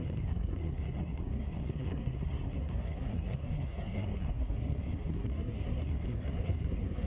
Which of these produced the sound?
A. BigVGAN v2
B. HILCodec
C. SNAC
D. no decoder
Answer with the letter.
C